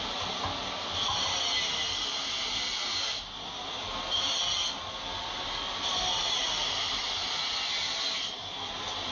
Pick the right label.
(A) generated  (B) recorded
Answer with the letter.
B